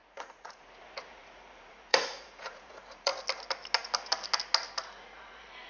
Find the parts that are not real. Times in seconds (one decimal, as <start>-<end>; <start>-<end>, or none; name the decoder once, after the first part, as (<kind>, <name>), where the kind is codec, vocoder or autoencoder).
0.0-3.1 (vocoder, Vocos); 5.0-5.7